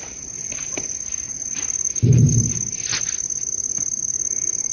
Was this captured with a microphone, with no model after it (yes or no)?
yes